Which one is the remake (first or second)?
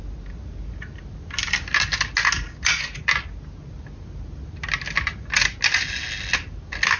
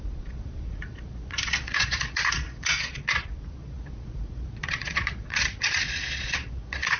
second